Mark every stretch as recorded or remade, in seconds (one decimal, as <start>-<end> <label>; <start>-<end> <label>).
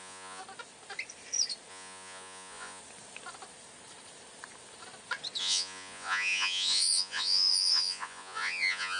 0.0-0.4 remade; 0.4-1.7 recorded; 1.7-2.8 remade; 2.8-5.4 recorded; 5.4-9.0 remade